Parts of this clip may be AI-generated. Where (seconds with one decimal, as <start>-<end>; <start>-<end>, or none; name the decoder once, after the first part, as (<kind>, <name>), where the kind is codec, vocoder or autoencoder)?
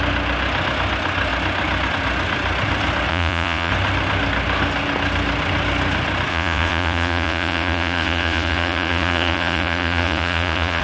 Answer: 3.1-3.7 (vocoder, Vocos); 6.3-10.8